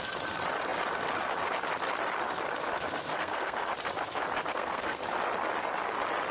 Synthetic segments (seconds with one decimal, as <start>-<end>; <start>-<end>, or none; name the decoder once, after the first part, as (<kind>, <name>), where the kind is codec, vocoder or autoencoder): 3.1-3.7 (codec, SNAC); 4.5-5.0